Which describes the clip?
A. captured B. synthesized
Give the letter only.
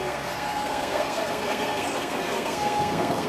B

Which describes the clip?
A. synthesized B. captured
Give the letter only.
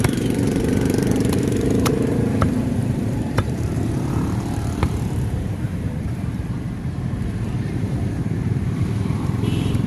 A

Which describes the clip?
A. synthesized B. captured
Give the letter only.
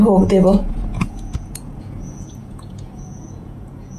A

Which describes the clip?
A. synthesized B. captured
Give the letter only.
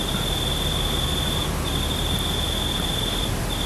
B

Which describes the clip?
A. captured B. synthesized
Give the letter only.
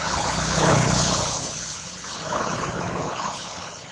B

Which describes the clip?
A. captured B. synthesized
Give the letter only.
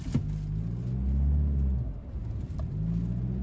A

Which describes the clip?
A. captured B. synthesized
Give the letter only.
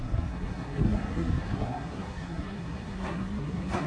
B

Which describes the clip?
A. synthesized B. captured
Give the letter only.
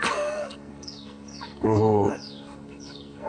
A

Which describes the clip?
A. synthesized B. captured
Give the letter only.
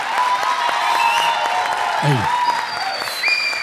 B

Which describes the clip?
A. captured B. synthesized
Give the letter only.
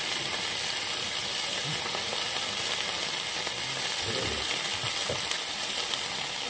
A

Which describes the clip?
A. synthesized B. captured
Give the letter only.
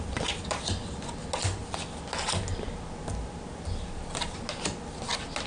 B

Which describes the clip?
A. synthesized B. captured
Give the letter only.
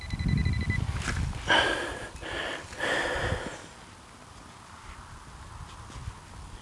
B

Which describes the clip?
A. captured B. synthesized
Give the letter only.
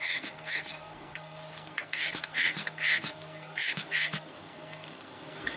B